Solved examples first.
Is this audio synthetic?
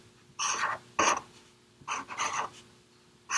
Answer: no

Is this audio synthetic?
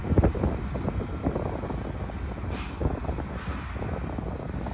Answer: no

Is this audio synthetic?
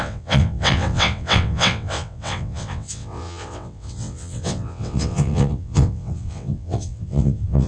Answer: yes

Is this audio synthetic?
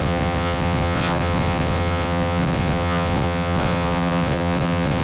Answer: yes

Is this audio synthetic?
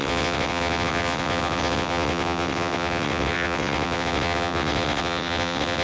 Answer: yes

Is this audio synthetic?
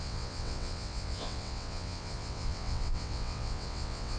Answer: yes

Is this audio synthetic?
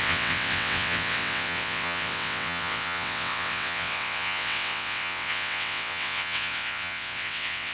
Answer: yes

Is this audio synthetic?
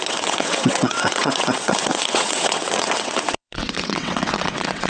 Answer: yes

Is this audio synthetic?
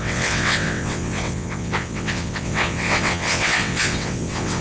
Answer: yes